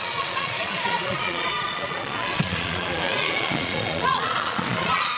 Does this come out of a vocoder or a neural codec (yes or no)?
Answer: yes